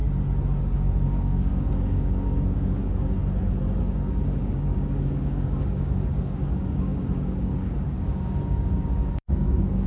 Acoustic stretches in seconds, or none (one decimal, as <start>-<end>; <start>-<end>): 0.0-0.6; 3.2-3.8